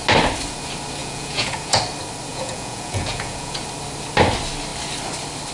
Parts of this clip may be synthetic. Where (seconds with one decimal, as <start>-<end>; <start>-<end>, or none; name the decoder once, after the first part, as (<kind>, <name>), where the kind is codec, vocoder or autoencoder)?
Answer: 1.0-1.8 (vocoder, Vocos); 2.3-3.6